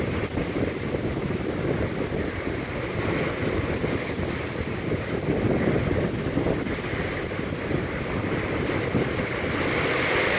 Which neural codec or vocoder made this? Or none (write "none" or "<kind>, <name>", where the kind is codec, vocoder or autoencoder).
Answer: none